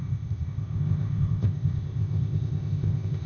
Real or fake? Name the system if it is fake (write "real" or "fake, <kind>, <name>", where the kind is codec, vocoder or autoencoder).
fake, codec, ZipCodec